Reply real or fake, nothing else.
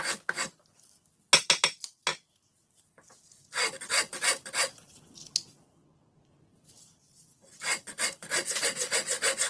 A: real